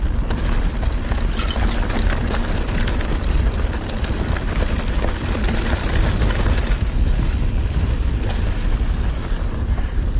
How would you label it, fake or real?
fake